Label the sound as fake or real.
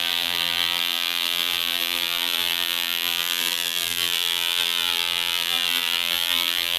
fake